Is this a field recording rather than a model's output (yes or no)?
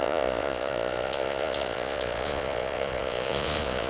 no